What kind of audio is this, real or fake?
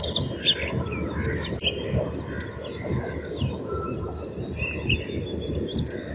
real